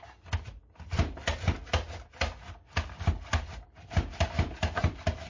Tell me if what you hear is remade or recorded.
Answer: recorded